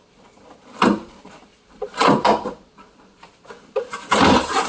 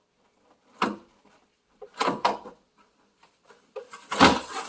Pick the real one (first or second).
second